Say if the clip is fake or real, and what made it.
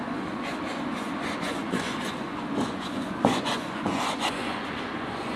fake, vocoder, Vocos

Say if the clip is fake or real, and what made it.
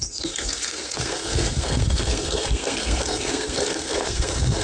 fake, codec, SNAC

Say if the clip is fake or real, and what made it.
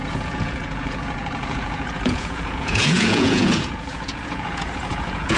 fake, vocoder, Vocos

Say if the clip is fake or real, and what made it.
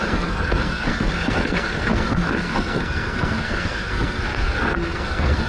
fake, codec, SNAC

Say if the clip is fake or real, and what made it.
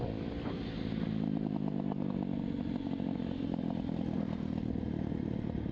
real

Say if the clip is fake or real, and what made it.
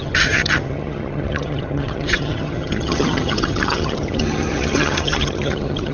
fake, vocoder, HiFi-GAN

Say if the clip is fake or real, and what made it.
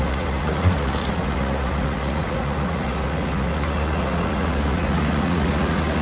fake, vocoder, Vocos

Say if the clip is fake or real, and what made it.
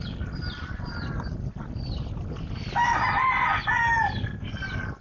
real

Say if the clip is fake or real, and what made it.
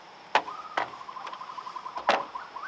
real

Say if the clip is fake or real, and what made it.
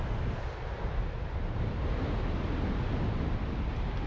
real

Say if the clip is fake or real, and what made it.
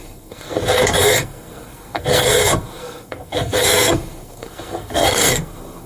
fake, codec, SNAC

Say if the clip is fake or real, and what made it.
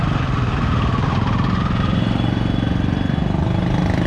real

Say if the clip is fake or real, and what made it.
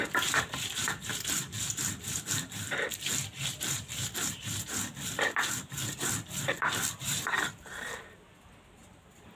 real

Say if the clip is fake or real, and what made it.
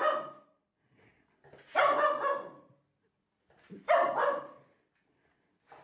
real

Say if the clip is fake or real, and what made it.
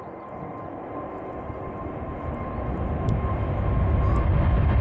real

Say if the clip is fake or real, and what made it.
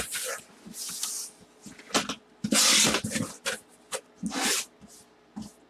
real